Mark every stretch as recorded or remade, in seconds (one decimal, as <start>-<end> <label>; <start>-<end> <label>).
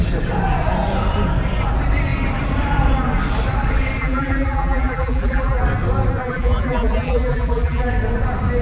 0.0-4.0 recorded; 4.0-5.6 remade; 5.6-6.2 recorded; 6.2-7.9 remade; 7.9-8.6 recorded